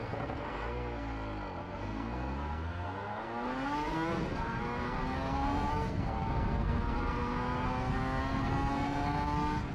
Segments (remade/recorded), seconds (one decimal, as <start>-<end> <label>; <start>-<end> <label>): 0.0-1.1 remade; 1.1-1.6 recorded; 1.6-9.7 remade